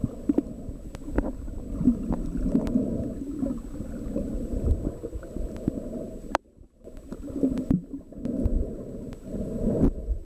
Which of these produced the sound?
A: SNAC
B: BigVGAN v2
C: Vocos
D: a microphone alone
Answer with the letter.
B